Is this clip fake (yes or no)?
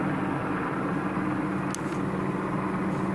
no